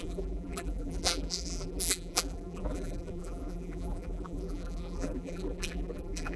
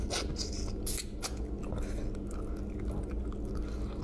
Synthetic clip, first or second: first